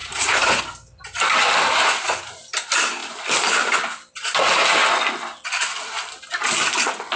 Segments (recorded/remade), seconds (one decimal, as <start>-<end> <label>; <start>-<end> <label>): 0.0-0.6 remade; 0.6-7.2 recorded